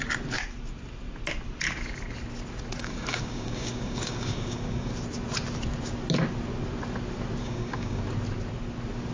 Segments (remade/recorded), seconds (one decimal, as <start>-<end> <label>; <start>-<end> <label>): 0.0-2.8 recorded; 2.8-4.9 remade; 4.9-7.4 recorded; 7.4-8.0 remade; 8.0-9.1 recorded